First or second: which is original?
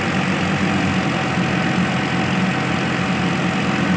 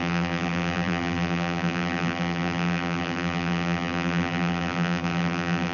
first